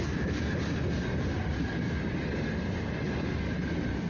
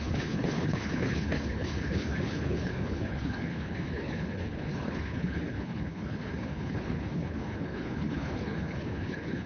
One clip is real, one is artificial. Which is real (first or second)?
first